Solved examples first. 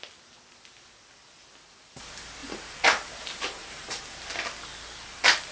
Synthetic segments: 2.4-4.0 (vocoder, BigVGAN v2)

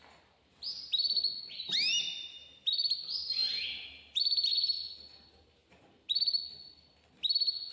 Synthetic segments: none